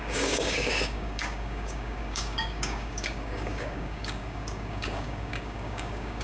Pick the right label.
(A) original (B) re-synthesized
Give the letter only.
B